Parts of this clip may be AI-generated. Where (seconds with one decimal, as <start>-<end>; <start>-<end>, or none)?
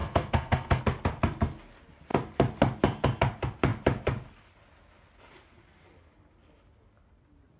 0.0-0.8